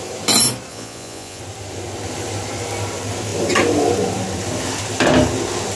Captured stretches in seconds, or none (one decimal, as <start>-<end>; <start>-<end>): 0.0-0.7; 1.4-5.7